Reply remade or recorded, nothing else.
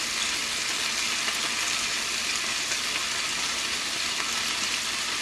recorded